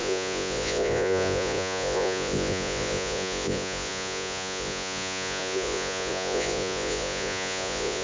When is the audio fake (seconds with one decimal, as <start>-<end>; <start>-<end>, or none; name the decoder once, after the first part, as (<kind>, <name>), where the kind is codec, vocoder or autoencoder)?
0.0-8.0 (vocoder, Vocos)